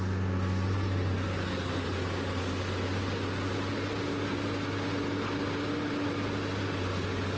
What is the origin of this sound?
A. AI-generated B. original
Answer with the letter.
B